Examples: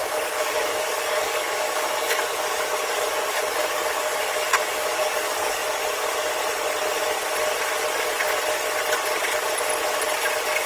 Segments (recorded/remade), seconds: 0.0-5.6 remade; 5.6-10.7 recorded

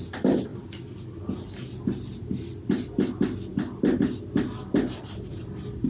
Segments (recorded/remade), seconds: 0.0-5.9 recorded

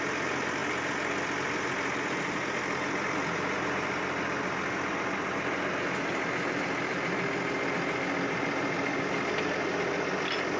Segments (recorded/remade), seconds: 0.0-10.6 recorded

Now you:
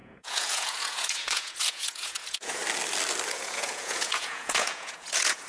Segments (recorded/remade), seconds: 0.0-2.6 remade; 2.6-3.3 recorded; 3.3-5.5 remade

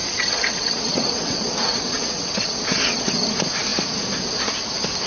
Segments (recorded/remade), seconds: 0.0-3.1 remade; 3.1-5.1 recorded